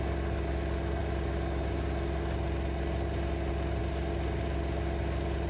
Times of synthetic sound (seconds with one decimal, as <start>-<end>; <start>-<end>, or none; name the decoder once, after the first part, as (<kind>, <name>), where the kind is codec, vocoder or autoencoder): none